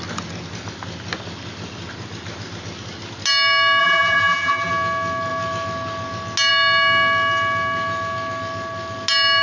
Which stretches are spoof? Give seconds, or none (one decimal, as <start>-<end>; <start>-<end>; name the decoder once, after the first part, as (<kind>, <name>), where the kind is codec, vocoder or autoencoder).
3.8-4.7 (vocoder, BigVGAN v2)

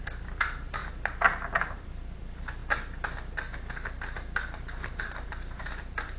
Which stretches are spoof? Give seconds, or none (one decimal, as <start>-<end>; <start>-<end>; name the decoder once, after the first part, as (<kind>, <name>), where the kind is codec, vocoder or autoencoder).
0.0-2.6 (vocoder, BigVGAN v2); 5.0-6.2